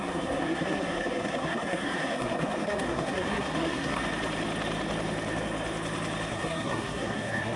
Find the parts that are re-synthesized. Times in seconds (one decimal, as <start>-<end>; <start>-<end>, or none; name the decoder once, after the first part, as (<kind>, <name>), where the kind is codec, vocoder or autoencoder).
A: 0.0-4.0 (codec, SNAC); 6.3-7.6